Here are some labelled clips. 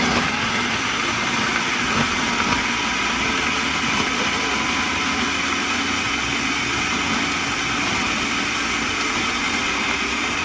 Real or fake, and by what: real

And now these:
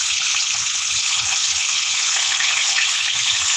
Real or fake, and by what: fake, codec, HILCodec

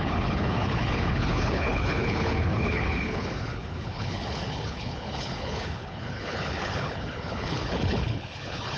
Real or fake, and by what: fake, codec, HILCodec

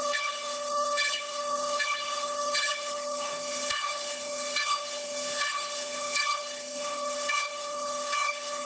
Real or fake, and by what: fake, codec, HILCodec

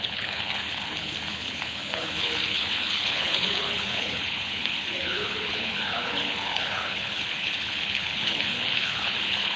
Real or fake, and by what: fake, codec, HILCodec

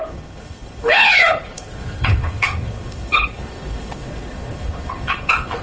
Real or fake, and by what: fake, codec, HILCodec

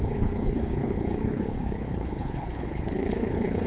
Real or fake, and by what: fake, codec, HILCodec